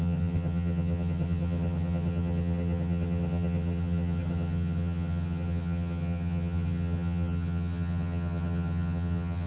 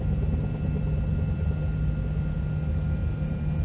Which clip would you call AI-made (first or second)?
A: first